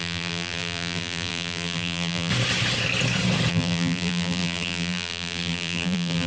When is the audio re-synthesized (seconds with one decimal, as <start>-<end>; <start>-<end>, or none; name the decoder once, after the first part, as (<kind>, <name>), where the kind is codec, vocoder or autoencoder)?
0.0-2.3 (vocoder, BigVGAN v2); 3.5-6.3